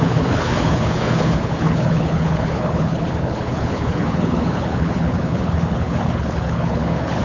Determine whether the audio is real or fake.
fake